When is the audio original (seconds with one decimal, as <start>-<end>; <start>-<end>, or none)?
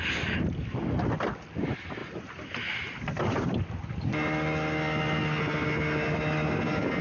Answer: 0.0-7.0